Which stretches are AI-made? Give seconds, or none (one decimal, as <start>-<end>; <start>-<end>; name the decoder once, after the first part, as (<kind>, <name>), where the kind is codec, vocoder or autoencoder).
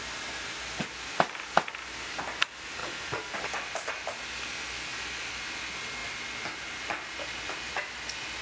none